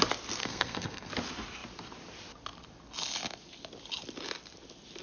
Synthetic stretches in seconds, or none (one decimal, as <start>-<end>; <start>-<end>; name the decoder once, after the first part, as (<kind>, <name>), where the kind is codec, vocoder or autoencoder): 0.4-1.1 (codec, SNAC)